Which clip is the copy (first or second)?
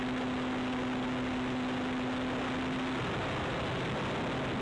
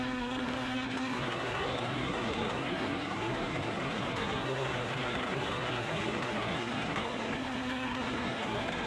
second